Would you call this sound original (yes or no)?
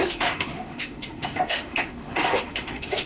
no